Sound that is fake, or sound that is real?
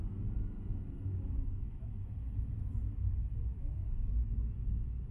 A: real